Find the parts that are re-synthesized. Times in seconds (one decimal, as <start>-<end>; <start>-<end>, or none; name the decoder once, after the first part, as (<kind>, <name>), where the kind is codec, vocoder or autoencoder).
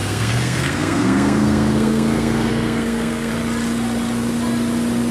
0.0-3.3 (codec, SNAC)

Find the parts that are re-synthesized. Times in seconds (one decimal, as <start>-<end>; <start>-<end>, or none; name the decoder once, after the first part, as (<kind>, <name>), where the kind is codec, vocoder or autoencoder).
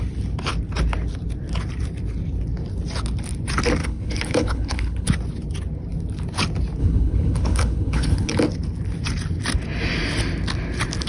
3.8-5.1 (codec, HILCodec); 6.8-8.4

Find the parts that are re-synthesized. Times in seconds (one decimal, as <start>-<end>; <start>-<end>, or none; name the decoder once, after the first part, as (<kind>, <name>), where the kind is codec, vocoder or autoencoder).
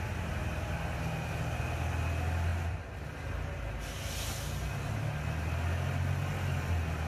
none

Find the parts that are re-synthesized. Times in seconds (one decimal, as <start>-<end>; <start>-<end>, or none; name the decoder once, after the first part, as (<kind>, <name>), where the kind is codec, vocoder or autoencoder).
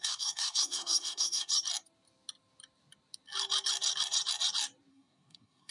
0.0-1.5 (codec, SNAC); 4.9-5.7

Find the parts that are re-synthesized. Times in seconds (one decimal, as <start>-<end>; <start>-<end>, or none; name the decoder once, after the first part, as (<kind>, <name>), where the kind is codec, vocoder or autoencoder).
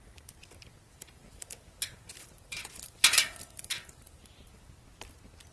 0.9-4.2 (vocoder, BigVGAN v2)